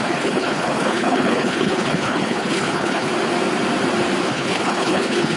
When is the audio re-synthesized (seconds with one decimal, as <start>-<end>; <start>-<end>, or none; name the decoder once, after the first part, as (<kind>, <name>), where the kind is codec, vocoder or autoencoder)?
0.0-3.1 (codec, HILCodec); 4.3-5.4